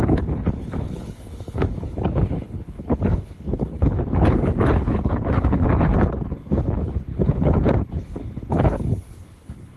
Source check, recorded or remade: remade